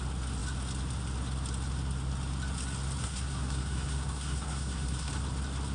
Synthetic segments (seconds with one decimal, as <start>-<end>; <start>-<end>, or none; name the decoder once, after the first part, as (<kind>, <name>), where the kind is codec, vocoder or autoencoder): 3.0-5.1 (codec, SNAC)